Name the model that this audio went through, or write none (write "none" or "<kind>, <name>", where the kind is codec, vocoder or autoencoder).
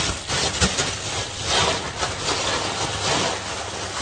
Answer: none